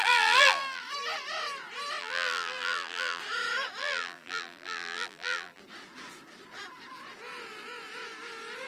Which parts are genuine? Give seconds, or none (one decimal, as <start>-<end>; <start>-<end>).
0.8-2.0; 3.2-3.8; 5.6-8.7